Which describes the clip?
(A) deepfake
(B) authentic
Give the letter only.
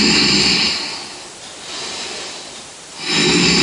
B